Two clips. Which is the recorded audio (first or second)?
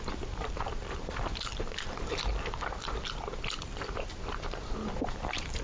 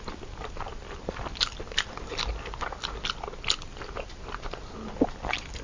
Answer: second